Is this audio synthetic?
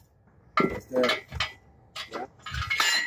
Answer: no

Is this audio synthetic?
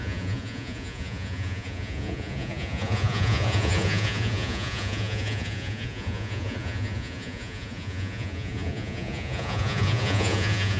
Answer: yes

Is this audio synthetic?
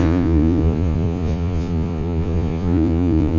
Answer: yes